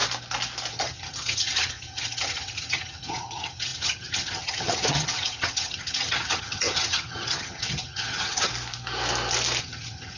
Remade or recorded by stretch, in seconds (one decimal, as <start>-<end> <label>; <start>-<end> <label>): 0.0-0.7 recorded; 0.7-8.5 remade; 8.5-9.6 recorded; 9.6-10.2 remade